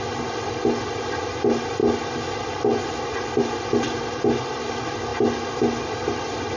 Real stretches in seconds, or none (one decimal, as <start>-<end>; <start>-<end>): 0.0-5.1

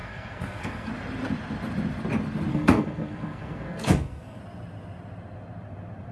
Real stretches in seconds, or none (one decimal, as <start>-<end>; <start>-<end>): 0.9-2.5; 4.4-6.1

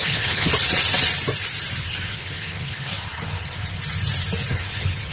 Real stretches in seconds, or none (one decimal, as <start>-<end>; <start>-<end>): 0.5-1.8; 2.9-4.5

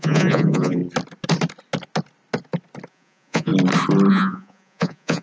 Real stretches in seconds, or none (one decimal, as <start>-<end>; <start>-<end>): 0.8-2.9; 3.5-4.1

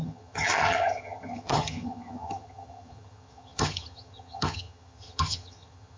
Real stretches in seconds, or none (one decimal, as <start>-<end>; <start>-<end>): none

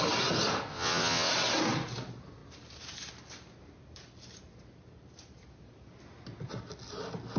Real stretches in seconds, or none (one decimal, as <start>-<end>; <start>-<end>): 0.0-0.7; 1.3-7.4